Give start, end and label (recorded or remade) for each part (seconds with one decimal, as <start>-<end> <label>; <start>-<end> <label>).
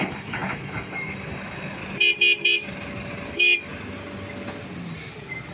0.0-1.8 remade; 1.8-3.3 recorded; 3.3-3.7 remade; 3.7-5.5 recorded